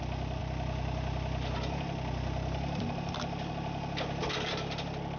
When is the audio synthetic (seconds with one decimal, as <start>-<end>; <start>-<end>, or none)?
none